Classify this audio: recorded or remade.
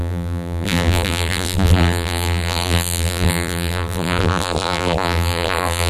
remade